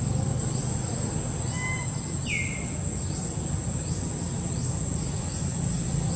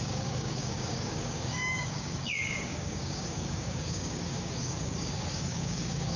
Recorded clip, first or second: first